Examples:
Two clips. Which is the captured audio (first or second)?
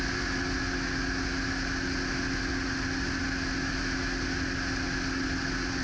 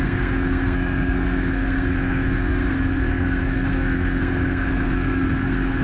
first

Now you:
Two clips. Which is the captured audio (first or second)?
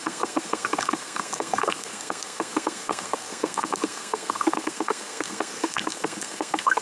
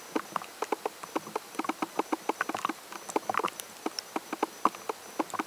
second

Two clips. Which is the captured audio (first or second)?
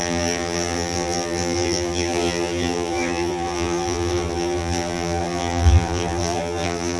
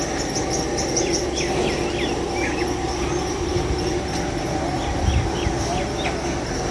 second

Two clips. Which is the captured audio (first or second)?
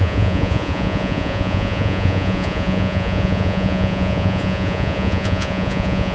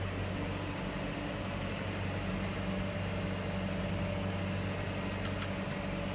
second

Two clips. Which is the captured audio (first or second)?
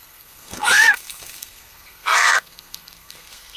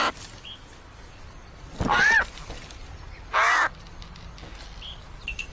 second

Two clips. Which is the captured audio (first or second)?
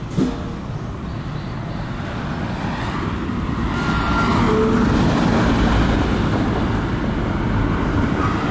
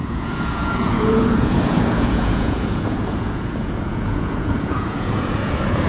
first